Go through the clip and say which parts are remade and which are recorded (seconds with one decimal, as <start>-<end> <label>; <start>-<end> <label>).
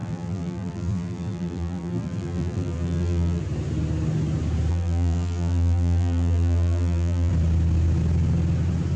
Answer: 0.0-3.4 remade; 3.4-4.7 recorded; 4.7-7.3 remade; 7.3-9.0 recorded